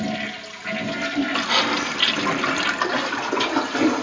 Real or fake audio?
real